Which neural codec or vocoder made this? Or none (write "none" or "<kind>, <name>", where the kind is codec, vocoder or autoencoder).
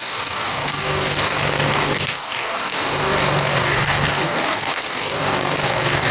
codec, DAC